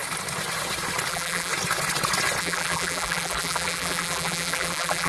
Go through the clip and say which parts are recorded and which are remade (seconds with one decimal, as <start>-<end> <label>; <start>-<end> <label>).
0.0-1.1 recorded; 1.1-1.5 remade; 1.5-2.4 recorded; 2.4-5.1 remade